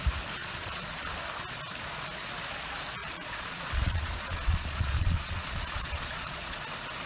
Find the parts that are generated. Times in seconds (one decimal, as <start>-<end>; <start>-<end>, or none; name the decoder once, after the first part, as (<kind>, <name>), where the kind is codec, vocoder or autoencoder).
0.4-1.1 (vocoder, Vocos); 3.0-6.6

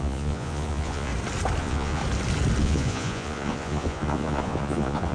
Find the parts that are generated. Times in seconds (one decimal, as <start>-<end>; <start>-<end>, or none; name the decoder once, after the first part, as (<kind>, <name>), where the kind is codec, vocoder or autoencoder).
0.0-1.1 (vocoder, Vocos); 1.6-2.0; 2.6-5.1

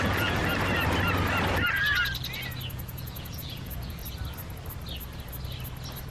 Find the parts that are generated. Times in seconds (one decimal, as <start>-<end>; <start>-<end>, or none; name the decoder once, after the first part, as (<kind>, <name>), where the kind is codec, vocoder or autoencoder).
0.0-0.4 (vocoder, Vocos); 2.7-4.0

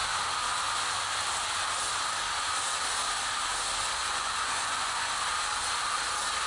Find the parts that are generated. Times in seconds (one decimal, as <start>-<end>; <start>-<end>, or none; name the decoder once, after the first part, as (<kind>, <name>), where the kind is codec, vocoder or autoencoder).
4.0-5.1 (vocoder, Vocos)

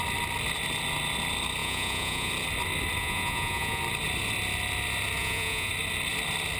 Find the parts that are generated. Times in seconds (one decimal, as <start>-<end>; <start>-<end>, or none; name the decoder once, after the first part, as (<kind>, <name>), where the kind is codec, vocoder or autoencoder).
1.6-2.3 (vocoder, Vocos); 3.0-3.8; 5.2-5.7

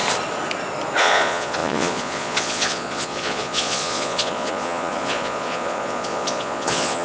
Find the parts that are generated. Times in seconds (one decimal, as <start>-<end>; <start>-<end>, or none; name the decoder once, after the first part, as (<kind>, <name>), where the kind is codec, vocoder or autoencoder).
1.0-7.0 (vocoder, Vocos)

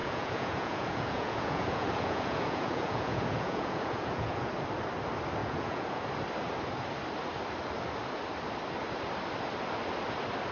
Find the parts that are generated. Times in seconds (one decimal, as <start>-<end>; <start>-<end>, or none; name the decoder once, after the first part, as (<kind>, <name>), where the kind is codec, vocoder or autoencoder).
0.0-4.5 (vocoder, Vocos); 5.4-6.0